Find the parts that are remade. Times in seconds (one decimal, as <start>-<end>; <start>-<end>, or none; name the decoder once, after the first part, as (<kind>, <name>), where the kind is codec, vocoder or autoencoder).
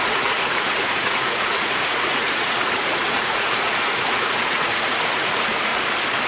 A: 0.0-5.7 (vocoder, Vocos)